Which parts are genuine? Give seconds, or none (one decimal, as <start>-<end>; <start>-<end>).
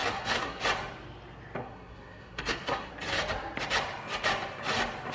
0.6-1.6; 2.9-5.1